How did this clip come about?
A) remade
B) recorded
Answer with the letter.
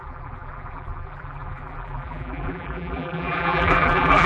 A